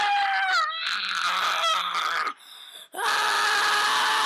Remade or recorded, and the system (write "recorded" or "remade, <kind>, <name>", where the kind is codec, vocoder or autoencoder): recorded